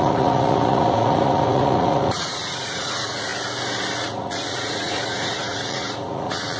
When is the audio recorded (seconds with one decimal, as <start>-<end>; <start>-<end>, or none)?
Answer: 3.3-4.0

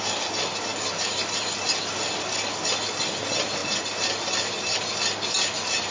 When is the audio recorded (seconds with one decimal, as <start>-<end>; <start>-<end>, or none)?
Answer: 0.0-5.9